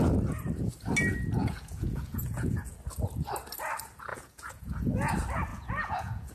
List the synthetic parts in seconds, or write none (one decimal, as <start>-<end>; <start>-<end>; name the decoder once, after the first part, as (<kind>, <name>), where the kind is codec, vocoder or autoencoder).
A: 1.4-2.8 (vocoder, Vocos); 4.1-5.1; 5.5-6.3